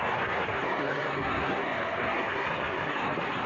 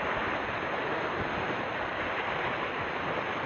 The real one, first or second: second